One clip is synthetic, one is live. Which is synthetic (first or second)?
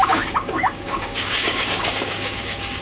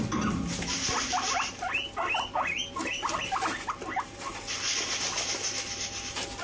first